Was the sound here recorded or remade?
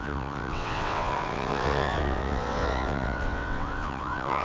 remade